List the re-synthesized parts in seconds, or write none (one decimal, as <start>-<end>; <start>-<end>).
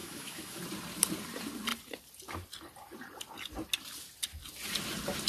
0.0-0.6